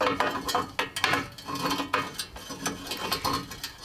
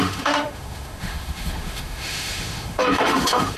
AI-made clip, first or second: second